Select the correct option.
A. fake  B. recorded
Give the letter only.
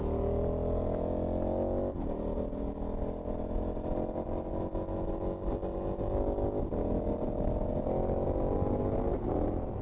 B